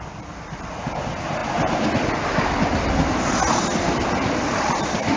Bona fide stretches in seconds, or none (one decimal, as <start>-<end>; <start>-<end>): 0.0-5.2